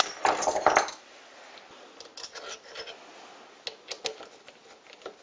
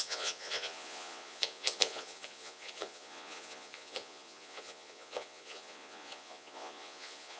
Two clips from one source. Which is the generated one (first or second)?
second